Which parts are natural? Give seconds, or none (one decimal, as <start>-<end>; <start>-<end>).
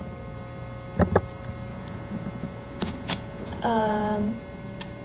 0.0-1.7; 4.3-5.0